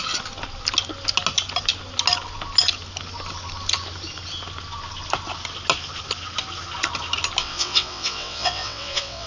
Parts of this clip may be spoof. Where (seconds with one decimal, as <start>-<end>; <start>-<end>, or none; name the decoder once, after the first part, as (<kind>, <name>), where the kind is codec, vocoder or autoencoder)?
7.4-9.3 (vocoder, WaveNeXt)